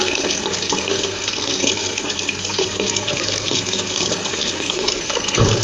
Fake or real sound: fake